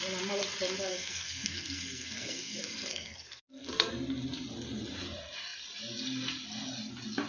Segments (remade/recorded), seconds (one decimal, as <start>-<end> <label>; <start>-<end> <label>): 0.0-0.9 recorded; 0.9-3.9 remade; 3.9-7.3 recorded